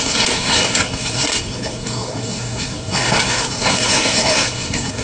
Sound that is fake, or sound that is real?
fake